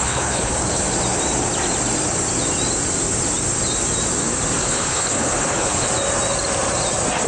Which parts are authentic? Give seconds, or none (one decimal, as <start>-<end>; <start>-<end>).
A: 0.8-4.6; 5.9-7.3